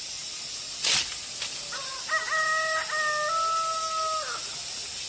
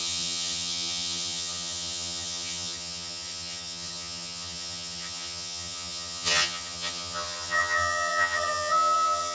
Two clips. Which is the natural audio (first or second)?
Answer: first